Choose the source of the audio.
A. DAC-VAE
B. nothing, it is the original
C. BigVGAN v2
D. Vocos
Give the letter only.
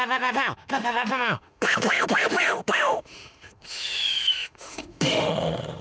A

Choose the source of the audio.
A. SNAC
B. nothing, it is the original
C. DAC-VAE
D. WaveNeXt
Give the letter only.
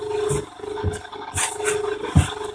B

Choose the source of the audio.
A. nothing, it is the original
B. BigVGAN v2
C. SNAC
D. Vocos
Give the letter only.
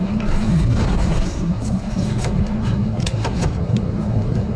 C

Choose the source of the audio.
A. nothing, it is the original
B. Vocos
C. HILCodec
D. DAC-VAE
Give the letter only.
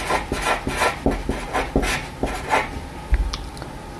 A